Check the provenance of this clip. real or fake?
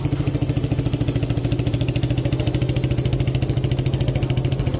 real